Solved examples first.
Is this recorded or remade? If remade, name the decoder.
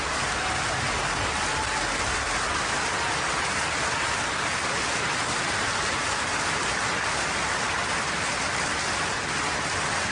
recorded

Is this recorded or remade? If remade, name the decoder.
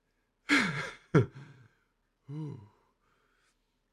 recorded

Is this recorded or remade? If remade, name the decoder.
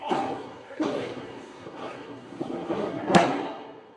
remade, codec, SNAC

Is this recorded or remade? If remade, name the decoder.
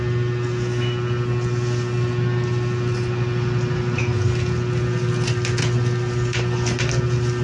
recorded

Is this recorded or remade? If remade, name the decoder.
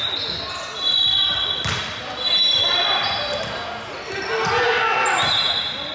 recorded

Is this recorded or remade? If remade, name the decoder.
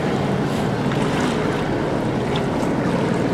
recorded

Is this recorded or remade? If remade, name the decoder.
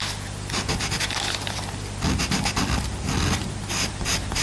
recorded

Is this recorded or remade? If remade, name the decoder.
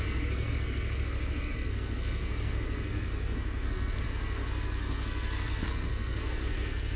remade, codec, SNAC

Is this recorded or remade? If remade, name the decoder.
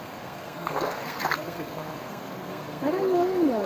remade, codec, SNAC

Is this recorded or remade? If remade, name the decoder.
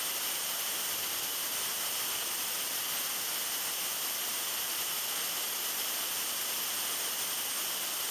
recorded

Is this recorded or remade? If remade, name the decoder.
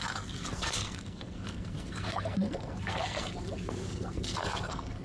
remade, codec, SNAC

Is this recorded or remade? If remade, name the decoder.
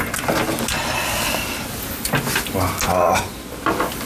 recorded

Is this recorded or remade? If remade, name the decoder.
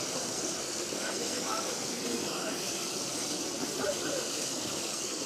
remade, codec, SNAC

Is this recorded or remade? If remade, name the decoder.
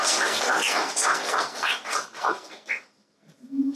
remade, codec, SNAC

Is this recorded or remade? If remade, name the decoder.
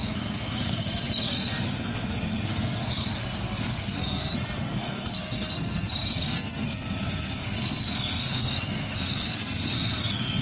remade, codec, SNAC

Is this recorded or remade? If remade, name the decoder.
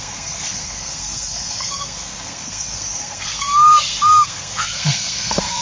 remade, codec, SNAC